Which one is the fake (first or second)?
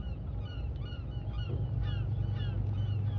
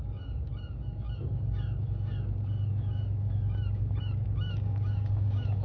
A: second